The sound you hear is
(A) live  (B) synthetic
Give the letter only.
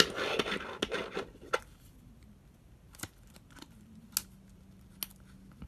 A